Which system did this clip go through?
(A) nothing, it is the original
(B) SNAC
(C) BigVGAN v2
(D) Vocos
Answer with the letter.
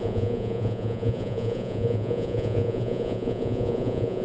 D